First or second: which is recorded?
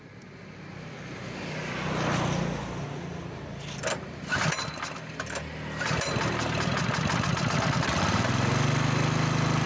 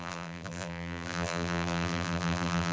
first